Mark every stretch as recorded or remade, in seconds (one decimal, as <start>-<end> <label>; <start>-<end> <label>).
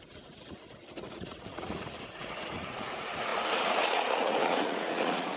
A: 0.0-5.4 remade